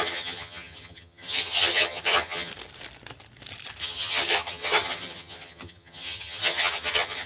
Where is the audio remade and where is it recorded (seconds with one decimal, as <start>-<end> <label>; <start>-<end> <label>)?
0.0-2.5 remade; 2.5-3.8 recorded; 3.8-7.3 remade